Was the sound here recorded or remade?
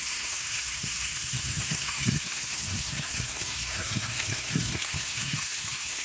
remade